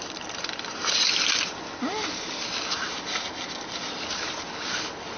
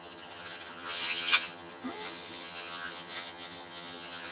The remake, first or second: second